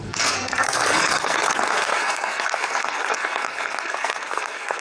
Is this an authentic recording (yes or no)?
no